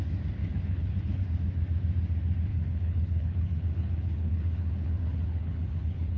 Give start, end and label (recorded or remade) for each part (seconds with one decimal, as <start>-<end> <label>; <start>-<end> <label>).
0.0-0.4 recorded; 0.4-1.2 remade; 1.2-2.5 recorded; 2.5-6.2 remade